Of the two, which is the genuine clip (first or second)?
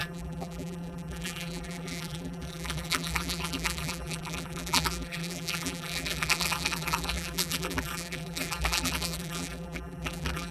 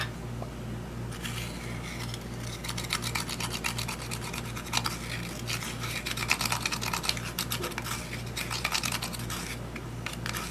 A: second